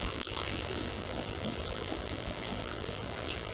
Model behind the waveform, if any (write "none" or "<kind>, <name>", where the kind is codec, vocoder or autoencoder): vocoder, BigVGAN v2